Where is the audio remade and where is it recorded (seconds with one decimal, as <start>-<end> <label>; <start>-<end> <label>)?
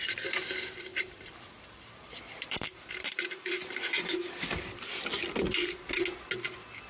0.0-0.9 recorded; 0.9-4.9 remade; 4.9-6.9 recorded